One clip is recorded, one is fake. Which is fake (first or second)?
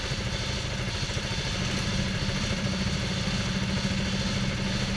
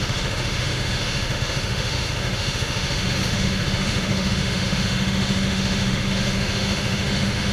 second